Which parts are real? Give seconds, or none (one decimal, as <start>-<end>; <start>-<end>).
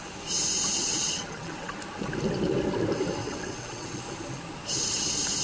0.0-0.8; 1.7-3.2; 4.0-5.4